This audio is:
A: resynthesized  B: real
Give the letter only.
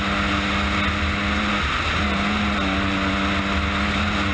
B